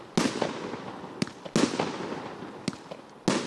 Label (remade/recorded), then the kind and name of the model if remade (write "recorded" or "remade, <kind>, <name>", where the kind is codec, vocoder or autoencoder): recorded